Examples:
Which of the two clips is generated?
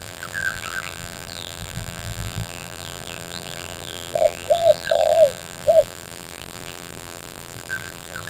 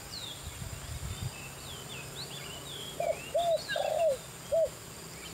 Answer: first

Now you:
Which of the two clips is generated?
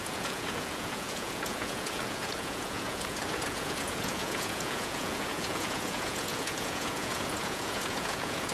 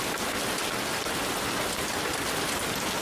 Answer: first